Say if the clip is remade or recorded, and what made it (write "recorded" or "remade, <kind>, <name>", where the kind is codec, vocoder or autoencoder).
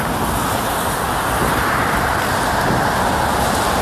recorded